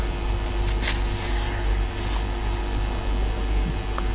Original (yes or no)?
yes